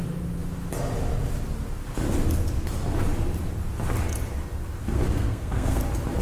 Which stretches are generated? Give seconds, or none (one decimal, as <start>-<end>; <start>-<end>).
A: 4.8-5.8